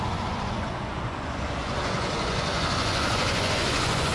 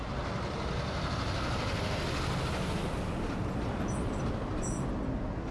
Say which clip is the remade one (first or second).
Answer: first